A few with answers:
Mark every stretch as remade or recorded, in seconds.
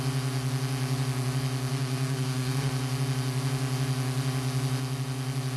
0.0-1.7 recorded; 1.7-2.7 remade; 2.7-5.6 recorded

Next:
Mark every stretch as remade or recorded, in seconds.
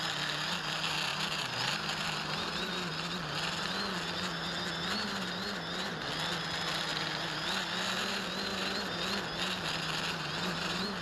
0.0-11.0 recorded